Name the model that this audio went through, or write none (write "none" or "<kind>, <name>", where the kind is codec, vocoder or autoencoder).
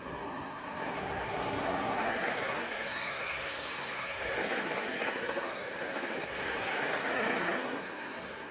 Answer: codec, SNAC